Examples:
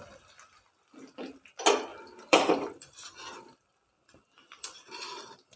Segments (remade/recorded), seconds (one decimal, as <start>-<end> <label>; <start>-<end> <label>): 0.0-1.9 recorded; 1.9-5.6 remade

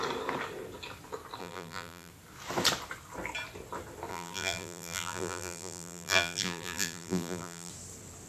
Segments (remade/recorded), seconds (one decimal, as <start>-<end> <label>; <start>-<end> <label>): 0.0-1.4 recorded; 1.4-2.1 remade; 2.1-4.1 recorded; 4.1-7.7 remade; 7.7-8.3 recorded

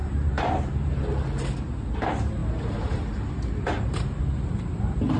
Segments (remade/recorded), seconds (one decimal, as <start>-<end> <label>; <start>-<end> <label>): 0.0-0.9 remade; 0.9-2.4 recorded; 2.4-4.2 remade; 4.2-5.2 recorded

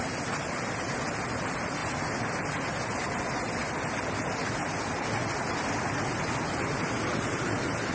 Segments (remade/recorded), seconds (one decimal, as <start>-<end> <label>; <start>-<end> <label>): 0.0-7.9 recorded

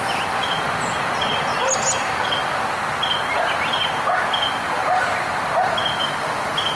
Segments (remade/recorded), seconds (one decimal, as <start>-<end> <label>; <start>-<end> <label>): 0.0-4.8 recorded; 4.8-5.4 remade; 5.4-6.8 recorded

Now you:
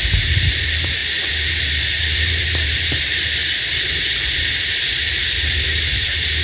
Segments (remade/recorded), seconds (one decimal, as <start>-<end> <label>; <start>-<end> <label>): 0.0-3.4 remade; 3.4-4.9 recorded; 4.9-6.4 remade

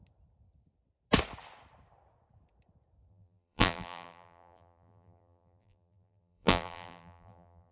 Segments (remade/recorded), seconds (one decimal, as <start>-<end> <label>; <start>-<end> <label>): 0.0-3.1 recorded; 3.1-7.7 remade

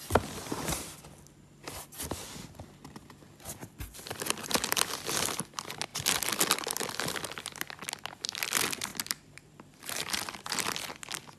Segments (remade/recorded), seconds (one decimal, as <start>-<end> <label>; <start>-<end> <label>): 0.0-8.9 recorded; 8.9-10.4 remade; 10.4-11.4 recorded